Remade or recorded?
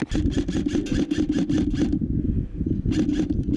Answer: recorded